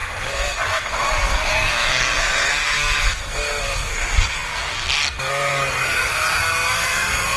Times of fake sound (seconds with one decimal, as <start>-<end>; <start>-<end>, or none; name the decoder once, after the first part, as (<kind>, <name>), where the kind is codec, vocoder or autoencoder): 0.0-7.4 (codec, SNAC)